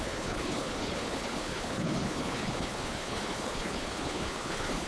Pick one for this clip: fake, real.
fake